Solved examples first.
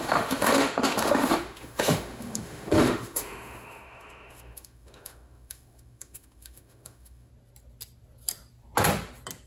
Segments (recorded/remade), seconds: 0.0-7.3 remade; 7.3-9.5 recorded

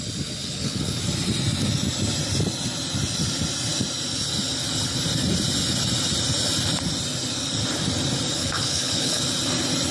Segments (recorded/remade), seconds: 0.0-0.4 recorded; 0.4-1.0 remade; 1.0-8.4 recorded; 8.4-9.2 remade; 9.2-9.9 recorded

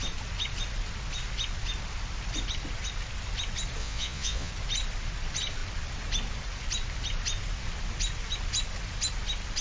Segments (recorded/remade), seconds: 0.0-3.8 recorded; 3.8-4.5 remade; 4.5-9.6 recorded

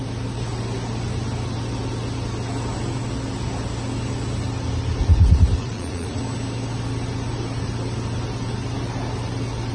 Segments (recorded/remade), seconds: 0.0-5.6 recorded; 5.6-6.2 remade; 6.2-9.7 recorded

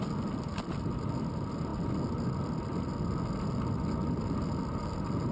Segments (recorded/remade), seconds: 0.0-5.3 recorded

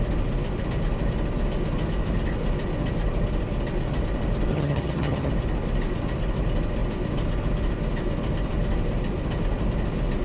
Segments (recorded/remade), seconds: 0.0-4.5 recorded; 4.5-5.3 remade; 5.3-10.2 recorded

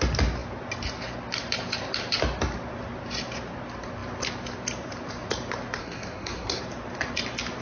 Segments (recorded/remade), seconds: 0.0-5.8 recorded; 5.8-6.6 remade; 6.6-7.6 recorded